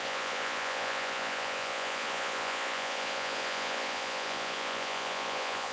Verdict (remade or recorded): remade